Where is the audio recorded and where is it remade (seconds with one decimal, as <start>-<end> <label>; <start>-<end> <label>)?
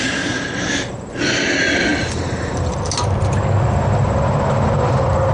0.0-5.3 recorded